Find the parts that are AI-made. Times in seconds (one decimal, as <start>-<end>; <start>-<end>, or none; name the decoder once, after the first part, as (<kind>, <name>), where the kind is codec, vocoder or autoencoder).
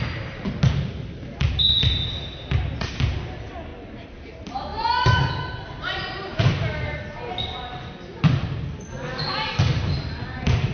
none